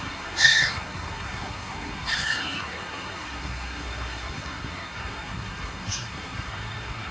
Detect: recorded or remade remade